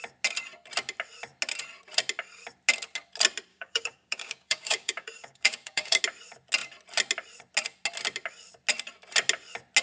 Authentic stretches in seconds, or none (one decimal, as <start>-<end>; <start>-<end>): 0.0-3.5; 6.0-9.8